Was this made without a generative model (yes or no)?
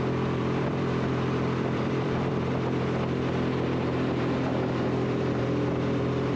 no